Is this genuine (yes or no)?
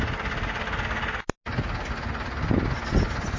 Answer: yes